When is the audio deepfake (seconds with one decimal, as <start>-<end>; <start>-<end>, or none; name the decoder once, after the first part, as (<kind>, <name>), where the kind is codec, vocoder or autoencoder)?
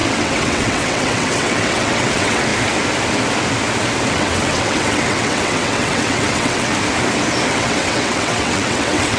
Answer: 0.0-2.5 (vocoder, WaveNeXt); 4.1-6.7; 7.5-9.2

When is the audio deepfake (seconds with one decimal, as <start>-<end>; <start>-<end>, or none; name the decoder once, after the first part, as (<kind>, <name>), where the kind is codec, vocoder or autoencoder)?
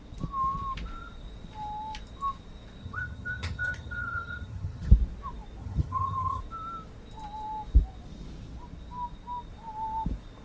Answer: 2.8-4.9 (vocoder, HiFi-GAN); 5.6-6.4